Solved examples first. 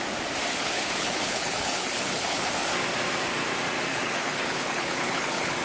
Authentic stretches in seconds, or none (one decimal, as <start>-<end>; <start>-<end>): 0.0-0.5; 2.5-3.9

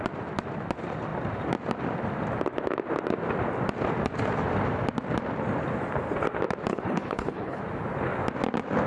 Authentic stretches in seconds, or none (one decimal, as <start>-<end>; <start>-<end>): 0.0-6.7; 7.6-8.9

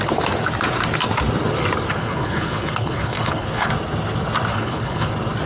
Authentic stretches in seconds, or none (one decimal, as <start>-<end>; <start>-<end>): 0.0-2.0; 3.7-4.5; 5.1-5.5

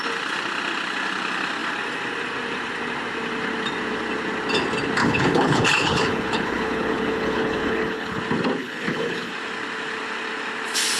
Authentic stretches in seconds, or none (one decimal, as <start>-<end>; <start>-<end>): 0.0-5.0; 8.2-8.6; 9.3-11.0